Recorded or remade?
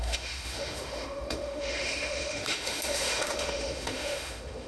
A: remade